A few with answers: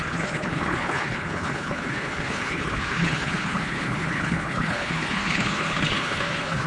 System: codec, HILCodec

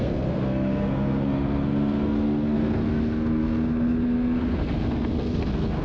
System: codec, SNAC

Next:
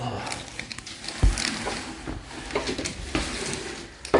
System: none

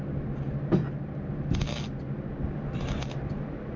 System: none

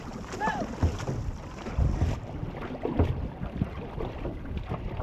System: none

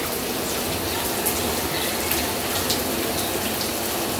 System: none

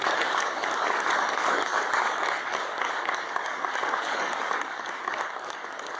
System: codec, DAC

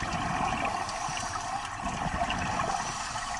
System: none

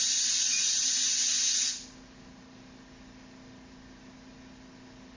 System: none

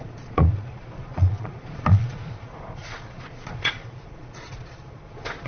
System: vocoder, Vocos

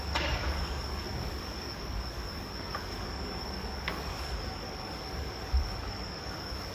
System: codec, DAC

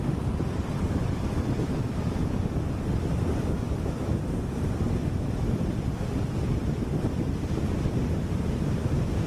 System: none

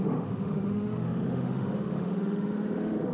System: autoencoder, DAC-VAE